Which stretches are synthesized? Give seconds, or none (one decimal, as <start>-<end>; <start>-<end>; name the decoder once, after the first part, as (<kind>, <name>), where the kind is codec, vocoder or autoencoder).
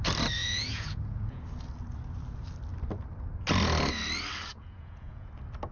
0.4-1.4 (vocoder, Vocos); 4.5-5.3